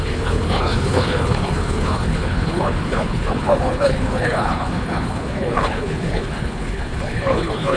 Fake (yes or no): yes